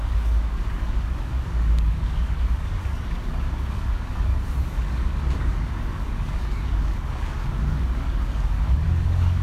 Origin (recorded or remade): remade